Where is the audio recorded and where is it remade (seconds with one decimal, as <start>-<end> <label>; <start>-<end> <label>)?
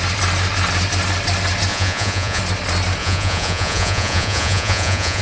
0.0-1.7 recorded; 1.7-2.4 remade; 2.4-3.0 recorded; 3.0-5.2 remade